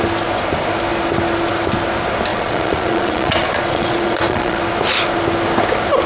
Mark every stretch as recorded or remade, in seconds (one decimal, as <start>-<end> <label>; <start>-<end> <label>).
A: 0.0-2.3 recorded; 2.3-4.6 remade; 4.6-6.1 recorded